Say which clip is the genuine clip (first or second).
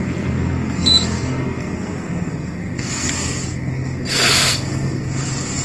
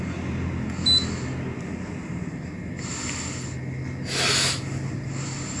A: second